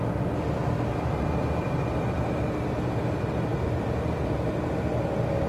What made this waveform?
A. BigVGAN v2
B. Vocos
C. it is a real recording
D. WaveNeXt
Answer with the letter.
C